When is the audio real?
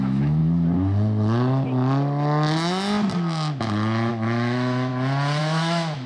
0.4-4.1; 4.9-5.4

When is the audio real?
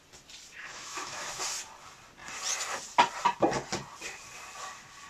0.0-0.6; 1.4-5.1